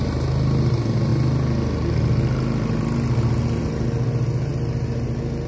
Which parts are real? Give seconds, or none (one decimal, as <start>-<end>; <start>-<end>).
0.0-5.5